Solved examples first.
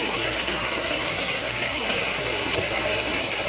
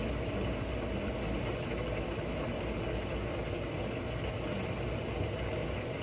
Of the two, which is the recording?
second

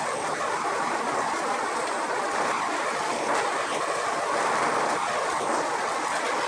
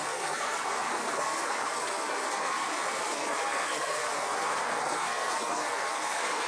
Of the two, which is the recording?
first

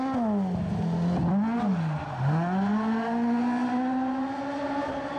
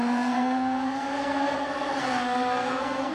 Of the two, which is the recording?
first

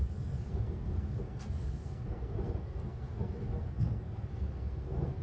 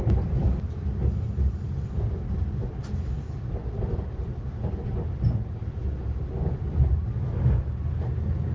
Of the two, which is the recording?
second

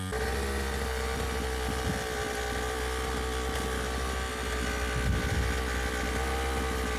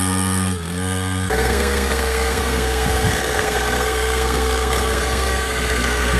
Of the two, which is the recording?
first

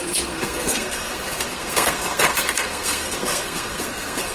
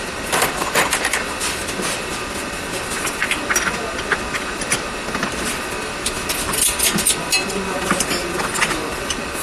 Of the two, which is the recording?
second